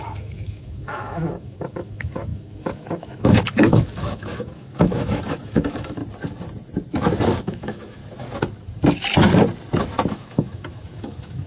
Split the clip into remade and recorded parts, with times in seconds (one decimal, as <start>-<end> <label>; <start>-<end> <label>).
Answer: 0.0-6.0 remade; 6.0-7.4 recorded; 7.4-8.0 remade; 8.0-10.1 recorded; 10.1-11.5 remade